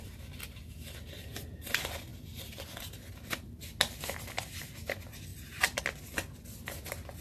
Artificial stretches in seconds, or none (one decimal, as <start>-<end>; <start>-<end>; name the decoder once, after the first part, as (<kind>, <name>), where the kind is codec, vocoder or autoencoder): 5.3-5.8 (vocoder, BigVGAN v2)